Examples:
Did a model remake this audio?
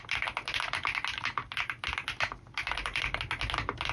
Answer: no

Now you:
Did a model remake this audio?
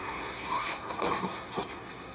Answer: yes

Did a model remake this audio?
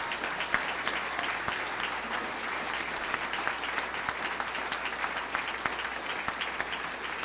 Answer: no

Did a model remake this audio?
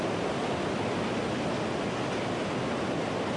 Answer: no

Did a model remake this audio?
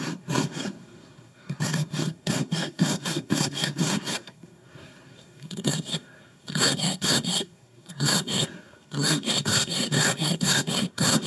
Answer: yes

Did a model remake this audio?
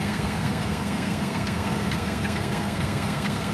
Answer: yes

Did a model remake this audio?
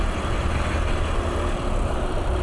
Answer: no